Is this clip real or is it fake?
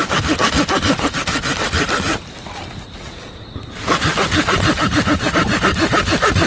real